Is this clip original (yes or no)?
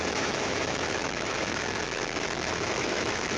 no